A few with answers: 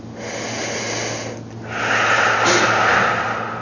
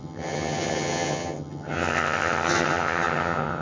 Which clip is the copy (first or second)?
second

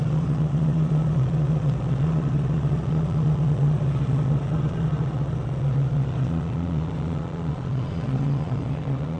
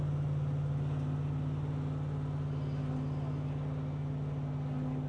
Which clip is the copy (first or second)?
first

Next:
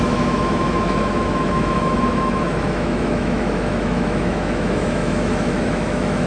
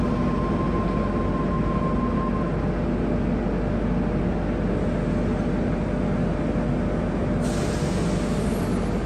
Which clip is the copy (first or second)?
first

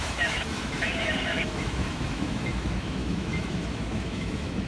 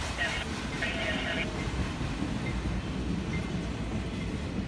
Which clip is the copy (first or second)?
first